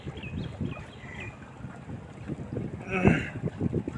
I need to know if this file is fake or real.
real